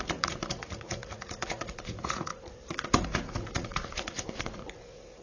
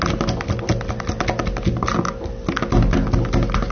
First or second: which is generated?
first